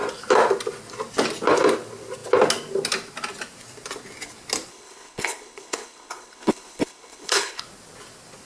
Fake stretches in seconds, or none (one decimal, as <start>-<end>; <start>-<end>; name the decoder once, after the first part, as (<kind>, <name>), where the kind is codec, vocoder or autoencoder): 4.7-7.6 (codec, HILCodec)